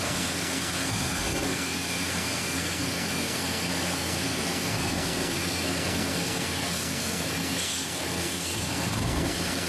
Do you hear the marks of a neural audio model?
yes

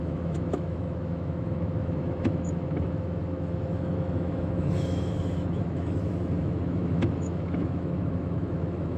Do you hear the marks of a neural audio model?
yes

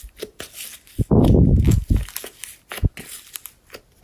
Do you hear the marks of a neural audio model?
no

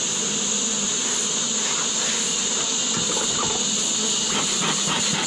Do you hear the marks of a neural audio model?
no